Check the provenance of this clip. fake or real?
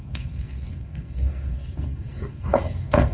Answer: fake